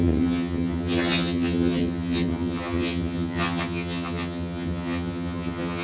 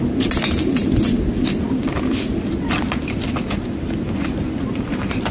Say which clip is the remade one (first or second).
first